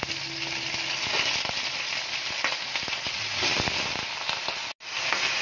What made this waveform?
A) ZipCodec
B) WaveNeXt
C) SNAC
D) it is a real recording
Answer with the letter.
D